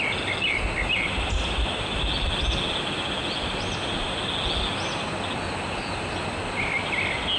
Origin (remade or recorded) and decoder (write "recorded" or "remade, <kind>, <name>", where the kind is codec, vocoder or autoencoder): recorded